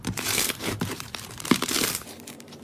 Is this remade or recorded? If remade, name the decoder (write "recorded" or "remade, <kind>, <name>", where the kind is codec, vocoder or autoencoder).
remade, vocoder, BigVGAN v2